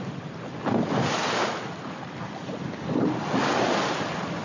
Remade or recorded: recorded